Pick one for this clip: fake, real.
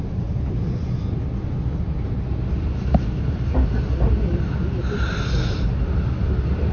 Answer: real